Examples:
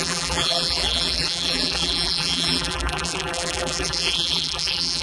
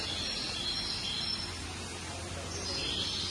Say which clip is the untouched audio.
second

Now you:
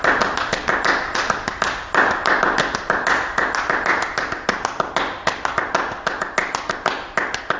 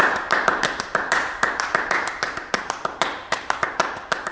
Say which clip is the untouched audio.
first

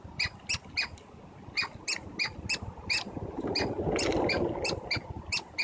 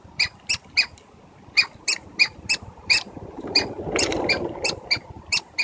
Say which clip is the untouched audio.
first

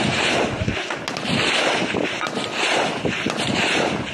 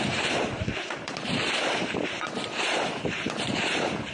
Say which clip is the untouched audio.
first